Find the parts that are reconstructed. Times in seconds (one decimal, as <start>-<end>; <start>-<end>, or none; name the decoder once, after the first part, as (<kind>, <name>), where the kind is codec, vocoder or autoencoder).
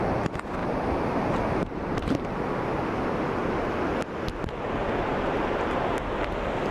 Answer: 0.6-2.3 (vocoder, BigVGAN v2); 4.8-5.4